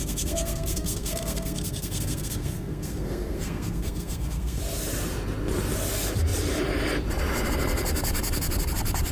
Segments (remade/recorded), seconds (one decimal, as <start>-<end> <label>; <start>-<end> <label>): 0.0-4.6 remade; 4.6-9.1 recorded